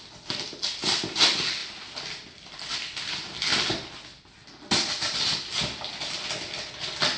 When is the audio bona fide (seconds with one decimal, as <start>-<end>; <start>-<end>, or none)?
0.0-7.2